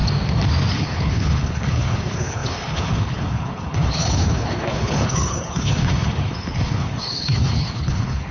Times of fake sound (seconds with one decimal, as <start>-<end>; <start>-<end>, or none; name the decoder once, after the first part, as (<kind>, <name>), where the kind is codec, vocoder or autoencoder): 0.7-8.3 (codec, HILCodec)